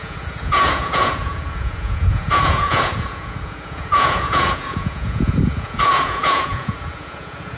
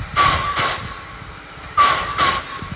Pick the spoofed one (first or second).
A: first